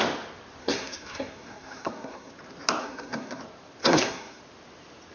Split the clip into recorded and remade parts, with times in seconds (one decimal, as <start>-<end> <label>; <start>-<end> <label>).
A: 0.0-0.6 recorded; 0.6-2.3 remade; 2.3-2.8 recorded; 2.8-3.4 remade; 3.4-3.8 recorded; 3.8-4.4 remade; 4.4-5.1 recorded